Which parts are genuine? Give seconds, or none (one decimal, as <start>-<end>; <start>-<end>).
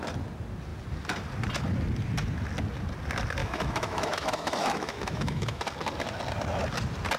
0.0-3.4; 5.6-7.2